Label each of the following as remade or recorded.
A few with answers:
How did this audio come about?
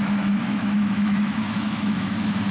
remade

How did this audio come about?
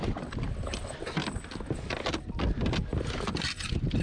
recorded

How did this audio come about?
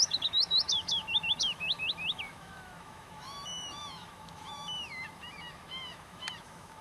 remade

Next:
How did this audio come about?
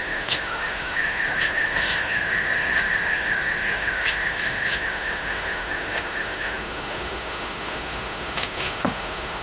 remade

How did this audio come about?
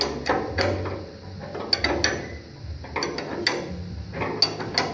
recorded